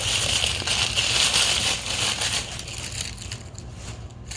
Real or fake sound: real